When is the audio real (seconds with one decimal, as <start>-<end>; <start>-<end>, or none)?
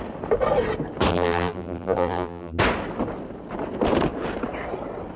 0.0-1.1; 2.6-5.2